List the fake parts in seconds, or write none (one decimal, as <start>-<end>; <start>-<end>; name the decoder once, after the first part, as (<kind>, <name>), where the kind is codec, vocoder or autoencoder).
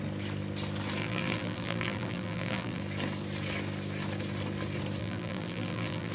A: 1.0-2.8 (vocoder, BigVGAN v2); 5.0-6.1